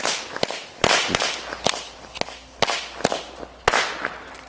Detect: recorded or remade recorded